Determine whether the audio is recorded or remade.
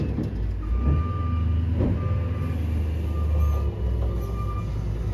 recorded